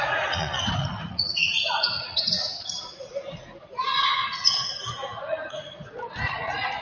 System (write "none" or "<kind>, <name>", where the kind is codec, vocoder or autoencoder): vocoder, Vocos